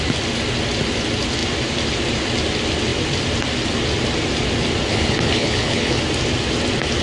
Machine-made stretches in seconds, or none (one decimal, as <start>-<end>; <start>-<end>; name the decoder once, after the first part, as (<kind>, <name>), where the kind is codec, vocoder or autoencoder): 4.9-6.0 (codec, HILCodec)